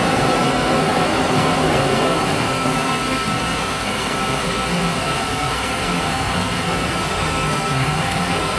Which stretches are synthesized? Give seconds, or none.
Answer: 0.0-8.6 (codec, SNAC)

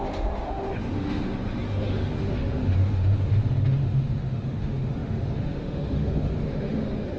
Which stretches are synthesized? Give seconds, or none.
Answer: 0.0-7.2 (autoencoder, DAC-VAE)

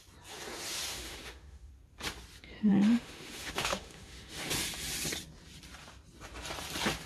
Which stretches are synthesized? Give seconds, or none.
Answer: 0.9-1.7 (autoencoder, DAC-VAE); 2.7-4.5

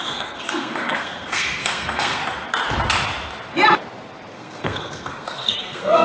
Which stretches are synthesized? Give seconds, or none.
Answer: 0.0-2.2 (codec, SNAC); 4.3-6.0

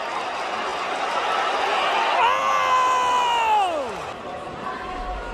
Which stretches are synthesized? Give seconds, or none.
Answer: none

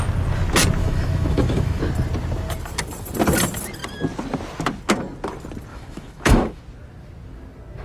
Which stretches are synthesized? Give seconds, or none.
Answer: 0.8-1.8 (autoencoder, DAC-VAE); 5.7-6.6

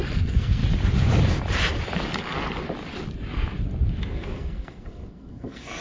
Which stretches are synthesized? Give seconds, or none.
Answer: 0.0-0.6 (codec, SNAC); 4.1-5.8

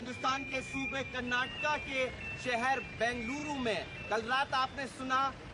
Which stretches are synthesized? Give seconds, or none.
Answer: 0.0-1.2 (codec, SNAC)